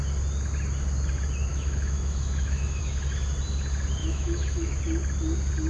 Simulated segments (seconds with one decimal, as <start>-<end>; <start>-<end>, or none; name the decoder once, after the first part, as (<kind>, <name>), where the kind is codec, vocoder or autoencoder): 1.5-2.8 (autoencoder, DAC-VAE); 4.0-4.8